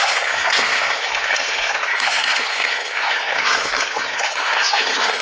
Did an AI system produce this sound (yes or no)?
yes